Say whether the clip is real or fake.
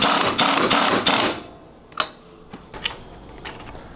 real